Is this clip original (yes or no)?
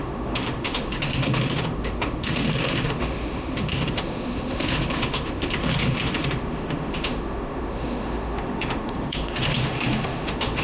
no